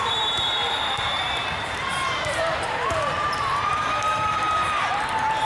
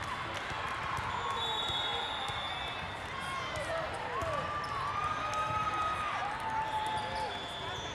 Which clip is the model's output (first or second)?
first